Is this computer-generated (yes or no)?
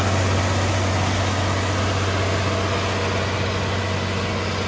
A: no